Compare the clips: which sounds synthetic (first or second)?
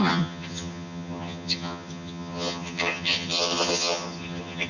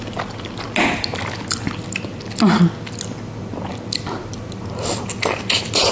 first